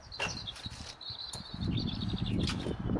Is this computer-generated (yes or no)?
no